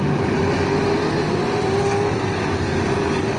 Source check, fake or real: real